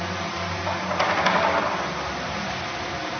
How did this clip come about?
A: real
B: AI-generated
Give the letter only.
A